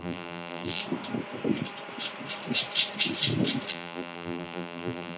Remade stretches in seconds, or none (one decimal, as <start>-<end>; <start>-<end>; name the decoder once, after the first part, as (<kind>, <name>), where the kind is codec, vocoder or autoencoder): 0.0-0.8 (vocoder, BigVGAN v2); 3.7-5.2